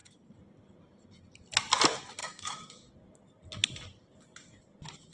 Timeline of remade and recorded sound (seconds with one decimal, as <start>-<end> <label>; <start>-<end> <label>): 0.0-2.2 recorded; 2.2-2.9 remade; 2.9-5.1 recorded